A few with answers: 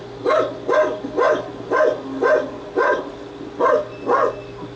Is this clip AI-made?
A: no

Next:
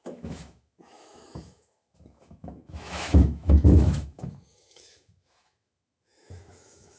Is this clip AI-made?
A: yes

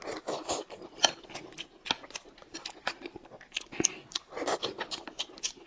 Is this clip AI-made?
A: no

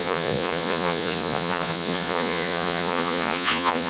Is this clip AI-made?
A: yes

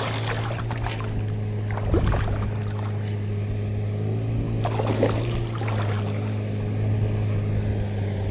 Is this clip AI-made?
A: no